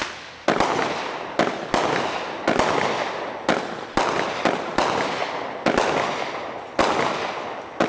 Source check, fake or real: real